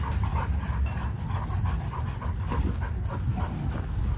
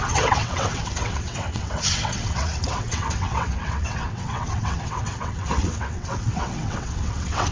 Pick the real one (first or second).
first